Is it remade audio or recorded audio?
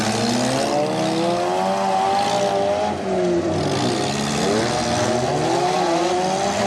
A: recorded